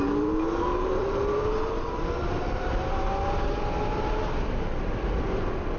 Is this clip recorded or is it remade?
recorded